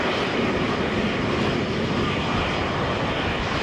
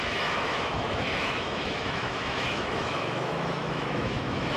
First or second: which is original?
first